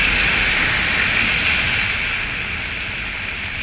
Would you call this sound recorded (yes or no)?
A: yes